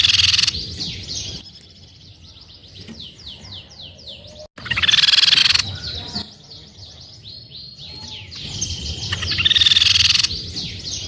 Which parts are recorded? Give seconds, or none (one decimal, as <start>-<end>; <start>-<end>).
0.0-11.1